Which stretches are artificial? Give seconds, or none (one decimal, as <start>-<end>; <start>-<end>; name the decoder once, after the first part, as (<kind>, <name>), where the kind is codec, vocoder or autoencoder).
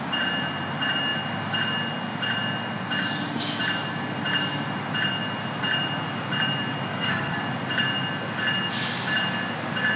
6.9-7.4 (codec, SNAC)